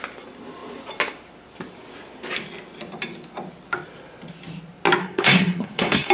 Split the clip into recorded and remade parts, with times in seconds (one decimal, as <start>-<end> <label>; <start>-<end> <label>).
0.0-5.0 recorded; 5.0-6.1 remade

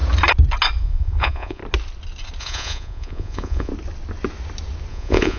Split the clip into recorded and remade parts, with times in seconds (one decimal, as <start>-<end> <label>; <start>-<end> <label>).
0.0-0.8 recorded; 0.8-1.6 remade; 1.6-2.4 recorded; 2.4-3.7 remade; 3.7-4.9 recorded; 4.9-5.4 remade

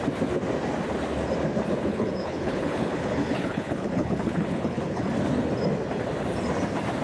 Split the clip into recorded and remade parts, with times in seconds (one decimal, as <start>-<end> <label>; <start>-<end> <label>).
0.0-1.9 recorded; 1.9-5.1 remade; 5.1-7.0 recorded

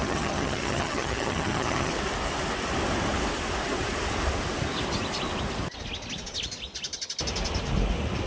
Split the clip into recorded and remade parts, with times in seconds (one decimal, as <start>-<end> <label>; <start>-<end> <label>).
0.0-1.9 remade; 1.9-8.3 recorded